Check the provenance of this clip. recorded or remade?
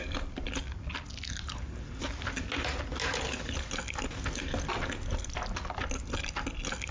recorded